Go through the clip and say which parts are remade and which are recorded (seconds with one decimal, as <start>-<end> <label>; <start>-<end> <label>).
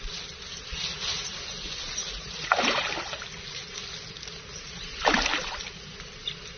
0.0-2.0 recorded; 2.0-2.6 remade; 2.6-6.6 recorded